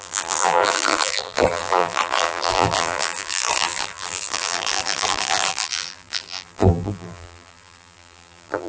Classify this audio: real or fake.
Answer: fake